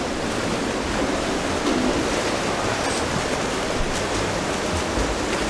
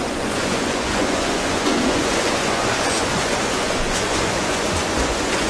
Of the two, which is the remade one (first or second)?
second